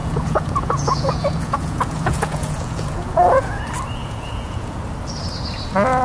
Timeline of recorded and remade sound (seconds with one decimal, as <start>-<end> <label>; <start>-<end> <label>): 0.0-3.6 remade; 3.6-4.0 recorded; 4.0-4.8 remade; 4.8-6.0 recorded